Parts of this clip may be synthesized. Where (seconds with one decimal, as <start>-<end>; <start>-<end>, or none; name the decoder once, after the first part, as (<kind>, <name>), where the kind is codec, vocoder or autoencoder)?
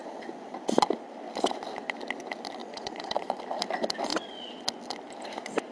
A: 2.6-3.4 (vocoder, Vocos); 4.1-4.6